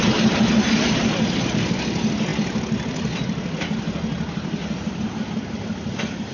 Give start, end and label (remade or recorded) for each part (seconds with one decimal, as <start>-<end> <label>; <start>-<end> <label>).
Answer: 0.0-6.3 recorded